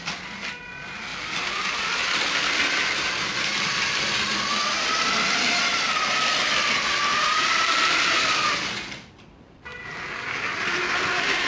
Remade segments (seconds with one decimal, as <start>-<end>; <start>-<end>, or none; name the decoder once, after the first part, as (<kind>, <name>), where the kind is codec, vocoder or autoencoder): 1.1-6.3 (vocoder, BigVGAN v2); 7.1-8.1